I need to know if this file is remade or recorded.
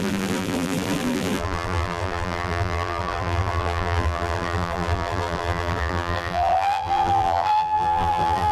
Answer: remade